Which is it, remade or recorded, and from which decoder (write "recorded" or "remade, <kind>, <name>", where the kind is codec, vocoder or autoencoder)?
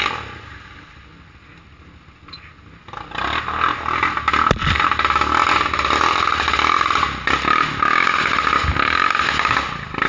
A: recorded